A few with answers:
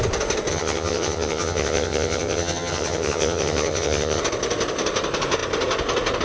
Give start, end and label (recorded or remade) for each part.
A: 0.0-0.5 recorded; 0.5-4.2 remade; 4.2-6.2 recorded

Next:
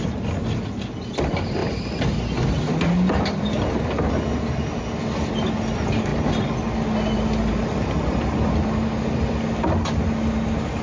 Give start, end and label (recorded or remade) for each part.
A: 0.0-10.8 recorded

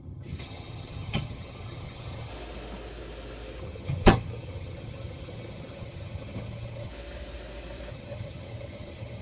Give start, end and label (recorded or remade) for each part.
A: 0.0-2.3 remade; 2.3-3.6 recorded; 3.6-6.9 remade; 6.9-7.9 recorded; 7.9-9.2 remade

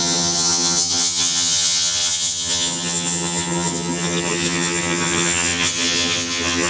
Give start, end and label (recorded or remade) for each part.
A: 0.0-6.7 remade

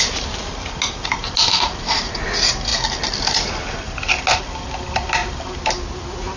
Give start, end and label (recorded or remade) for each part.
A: 0.0-6.4 recorded

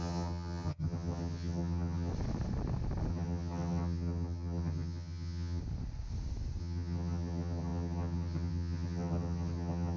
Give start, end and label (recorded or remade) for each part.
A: 0.0-2.1 remade; 2.1-3.1 recorded; 3.1-5.6 remade; 5.6-6.6 recorded; 6.6-10.0 remade